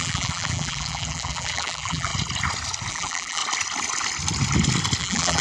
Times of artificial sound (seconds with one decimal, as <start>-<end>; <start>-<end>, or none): 0.0-2.1; 2.9-3.4; 5.0-5.4